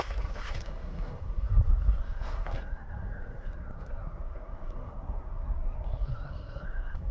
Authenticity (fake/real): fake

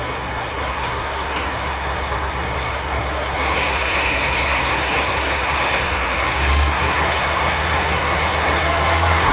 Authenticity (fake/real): fake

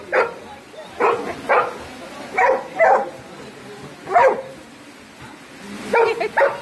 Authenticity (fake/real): real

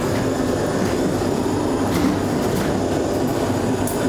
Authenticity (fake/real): real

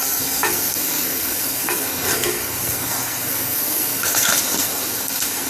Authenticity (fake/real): fake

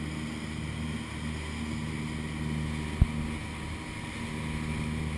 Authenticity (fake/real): real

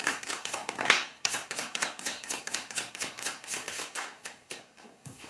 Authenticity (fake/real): fake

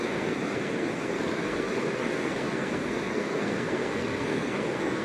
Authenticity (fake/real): fake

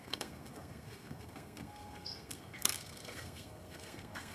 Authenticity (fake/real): fake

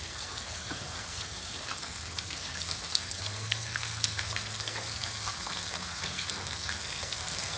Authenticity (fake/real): fake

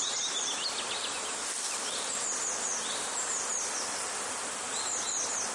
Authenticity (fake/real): real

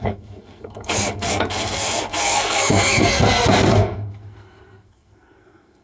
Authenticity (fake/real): fake